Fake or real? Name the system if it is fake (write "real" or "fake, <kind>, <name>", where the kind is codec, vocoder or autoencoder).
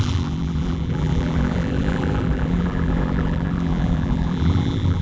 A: fake, vocoder, BigVGAN v2